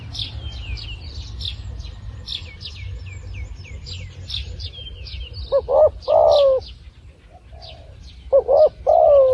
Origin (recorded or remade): recorded